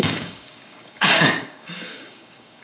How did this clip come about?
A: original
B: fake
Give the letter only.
B